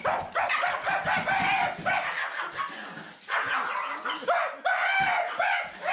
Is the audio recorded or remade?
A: recorded